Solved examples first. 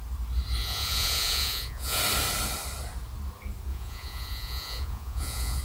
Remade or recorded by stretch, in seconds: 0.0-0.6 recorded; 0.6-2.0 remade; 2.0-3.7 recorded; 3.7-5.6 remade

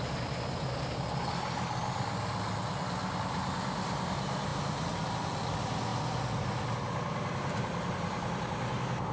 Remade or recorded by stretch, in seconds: 0.0-9.1 recorded

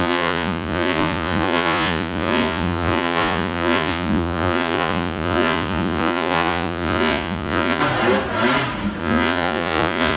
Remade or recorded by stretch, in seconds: 0.0-7.8 remade; 7.8-9.0 recorded; 9.0-10.2 remade

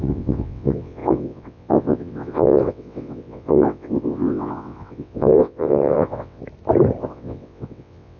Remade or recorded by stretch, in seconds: 0.0-6.4 remade; 6.4-7.0 recorded; 7.0-8.2 remade